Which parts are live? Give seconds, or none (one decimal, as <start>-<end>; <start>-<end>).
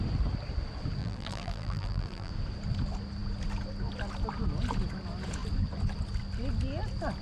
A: 0.0-1.0; 2.3-7.2